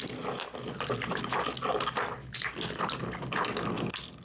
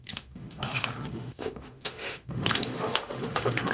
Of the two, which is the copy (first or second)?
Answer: second